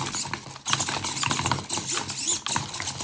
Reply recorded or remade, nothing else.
recorded